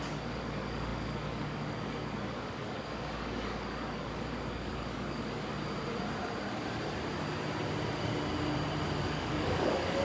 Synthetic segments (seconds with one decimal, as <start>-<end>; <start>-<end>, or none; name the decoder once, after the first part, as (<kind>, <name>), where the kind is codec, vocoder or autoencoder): 0.0-5.5 (codec, DAC); 9.0-10.0